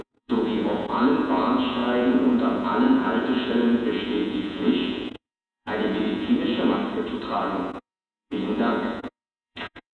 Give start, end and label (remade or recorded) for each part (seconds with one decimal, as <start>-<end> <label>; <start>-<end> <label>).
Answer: 0.0-6.8 remade; 6.8-7.4 recorded; 7.4-10.0 remade